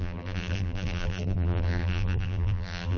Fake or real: fake